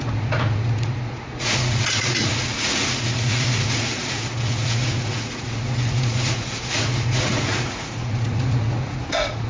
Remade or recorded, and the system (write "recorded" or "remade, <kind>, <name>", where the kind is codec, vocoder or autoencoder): remade, vocoder, Vocos